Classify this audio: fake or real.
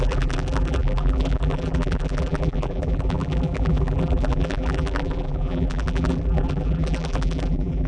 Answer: fake